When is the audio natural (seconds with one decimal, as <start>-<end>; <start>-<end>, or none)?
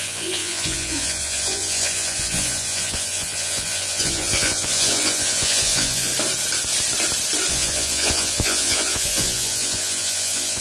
6.1-7.5